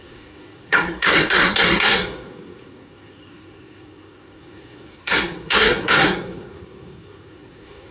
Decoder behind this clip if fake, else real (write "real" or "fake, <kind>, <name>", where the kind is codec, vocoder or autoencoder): fake, codec, SNAC